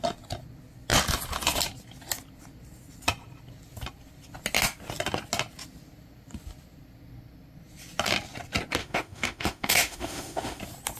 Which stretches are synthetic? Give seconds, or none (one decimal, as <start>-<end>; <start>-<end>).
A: 8.8-10.6